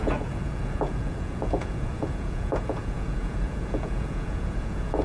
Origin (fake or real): fake